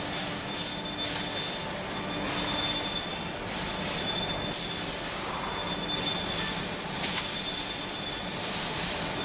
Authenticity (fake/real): real